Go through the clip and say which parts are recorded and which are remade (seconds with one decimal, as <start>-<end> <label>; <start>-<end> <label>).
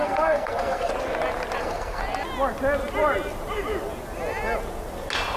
0.0-0.9 remade; 0.9-1.6 recorded; 1.6-2.0 remade; 2.0-5.4 recorded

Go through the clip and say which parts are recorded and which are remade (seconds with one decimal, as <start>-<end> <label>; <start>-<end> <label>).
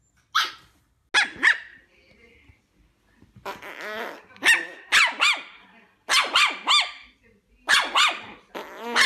0.0-9.1 recorded